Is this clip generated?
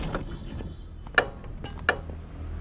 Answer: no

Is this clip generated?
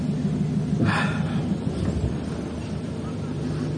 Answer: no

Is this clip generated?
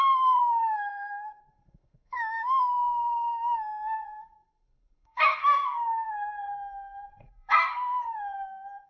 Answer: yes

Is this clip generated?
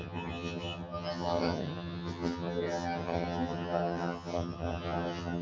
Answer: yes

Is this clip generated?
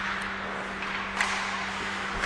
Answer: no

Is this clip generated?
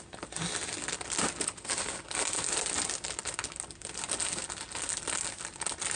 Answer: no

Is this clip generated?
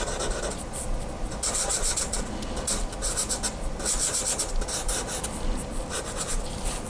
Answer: no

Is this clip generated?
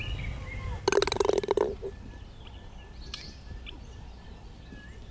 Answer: no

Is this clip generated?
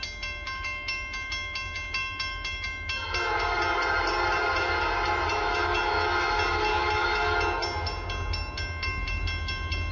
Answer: no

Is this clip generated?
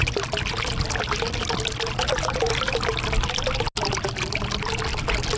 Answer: no